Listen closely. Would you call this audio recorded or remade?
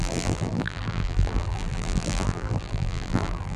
remade